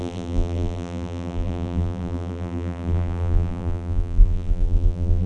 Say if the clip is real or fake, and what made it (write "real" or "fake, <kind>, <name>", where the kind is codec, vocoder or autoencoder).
fake, vocoder, BigVGAN v2